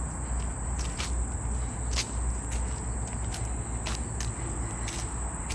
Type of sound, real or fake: real